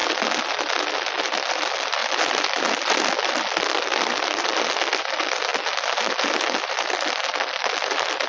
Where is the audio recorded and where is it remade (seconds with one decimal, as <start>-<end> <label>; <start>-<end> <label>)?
0.0-1.5 recorded; 1.5-5.5 remade; 5.5-6.9 recorded; 6.9-8.3 remade